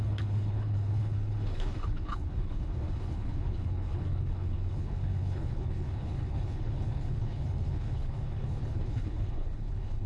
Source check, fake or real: fake